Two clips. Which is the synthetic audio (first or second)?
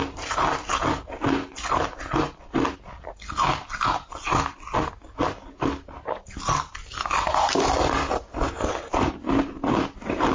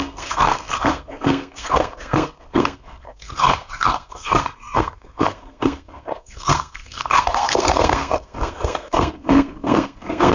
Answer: second